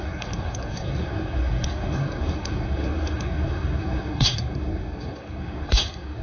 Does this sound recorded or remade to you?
remade